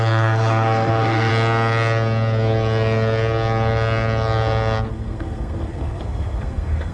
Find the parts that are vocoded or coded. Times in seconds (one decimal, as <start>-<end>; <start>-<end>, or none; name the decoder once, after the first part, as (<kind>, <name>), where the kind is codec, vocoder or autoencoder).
0.0-1.3 (codec, SNAC); 4.9-6.9